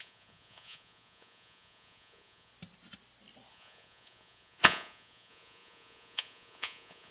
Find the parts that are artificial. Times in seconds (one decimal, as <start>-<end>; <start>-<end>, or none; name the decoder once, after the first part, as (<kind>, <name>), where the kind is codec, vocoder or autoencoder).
0.0-2.5 (vocoder, Vocos); 3.5-7.1